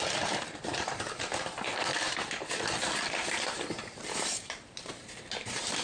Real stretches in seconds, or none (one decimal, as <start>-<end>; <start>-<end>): none